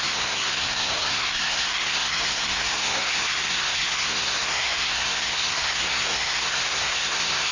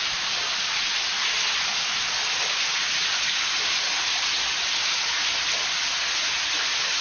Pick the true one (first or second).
second